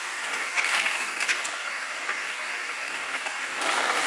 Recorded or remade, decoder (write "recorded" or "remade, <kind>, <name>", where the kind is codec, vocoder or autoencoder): remade, codec, DAC